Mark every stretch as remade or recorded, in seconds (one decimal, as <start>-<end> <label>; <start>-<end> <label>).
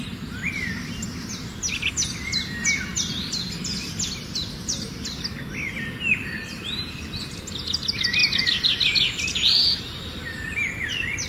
0.0-8.2 recorded; 8.2-9.8 remade; 9.8-11.3 recorded